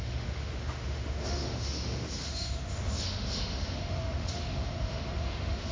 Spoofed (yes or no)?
yes